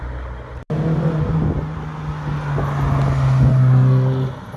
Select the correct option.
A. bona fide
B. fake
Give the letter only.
A